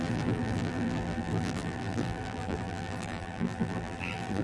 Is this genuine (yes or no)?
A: no